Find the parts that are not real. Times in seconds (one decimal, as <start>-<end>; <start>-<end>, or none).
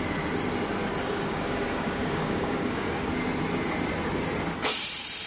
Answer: 1.0-3.1